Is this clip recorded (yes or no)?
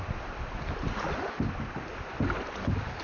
yes